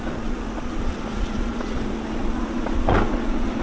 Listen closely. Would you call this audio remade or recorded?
remade